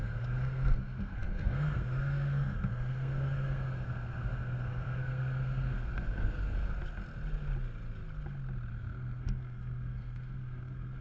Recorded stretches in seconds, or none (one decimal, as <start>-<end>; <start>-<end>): 6.6-8.7